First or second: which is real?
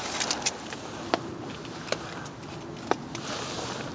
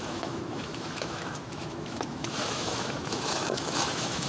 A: first